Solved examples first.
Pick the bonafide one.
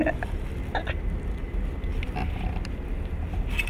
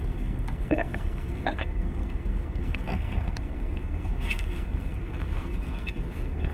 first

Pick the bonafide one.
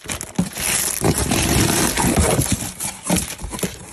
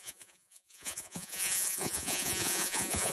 first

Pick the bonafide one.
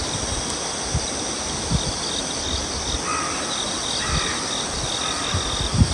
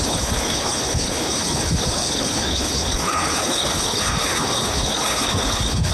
first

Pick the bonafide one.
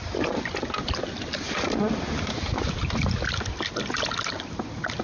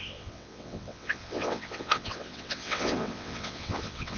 first